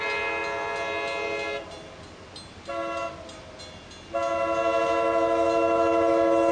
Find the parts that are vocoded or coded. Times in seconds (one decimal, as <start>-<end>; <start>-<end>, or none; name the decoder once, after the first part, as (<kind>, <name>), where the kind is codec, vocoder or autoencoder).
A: none